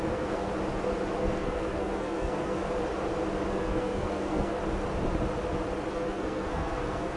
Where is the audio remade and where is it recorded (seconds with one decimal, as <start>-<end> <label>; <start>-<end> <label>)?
0.0-0.5 remade; 0.5-1.2 recorded; 1.2-2.6 remade; 2.6-3.5 recorded; 3.5-4.6 remade; 4.6-5.9 recorded; 5.9-7.2 remade